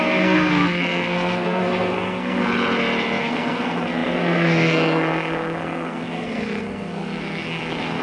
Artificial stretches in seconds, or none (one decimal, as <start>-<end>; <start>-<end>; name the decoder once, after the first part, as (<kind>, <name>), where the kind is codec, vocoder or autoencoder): 0.0-2.5 (codec, SNAC); 3.2-8.0